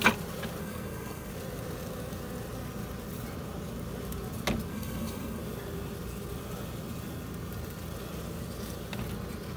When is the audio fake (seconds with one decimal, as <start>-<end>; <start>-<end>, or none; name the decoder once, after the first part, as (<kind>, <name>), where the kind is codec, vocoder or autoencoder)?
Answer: 0.6-1.3 (codec, SNAC); 4.7-5.4